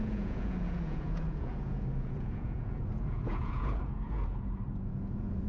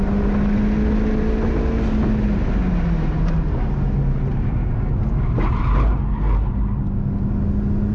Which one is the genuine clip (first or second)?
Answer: second